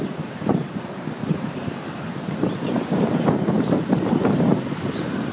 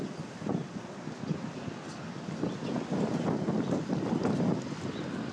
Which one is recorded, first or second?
second